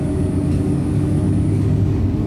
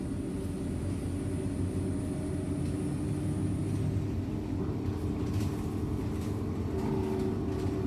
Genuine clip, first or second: second